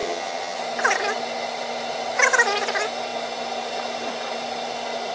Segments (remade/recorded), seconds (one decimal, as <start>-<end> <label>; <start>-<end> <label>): 0.0-0.6 remade; 0.6-5.1 recorded